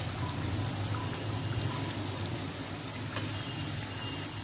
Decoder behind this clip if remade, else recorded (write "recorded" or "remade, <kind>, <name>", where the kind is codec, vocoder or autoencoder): recorded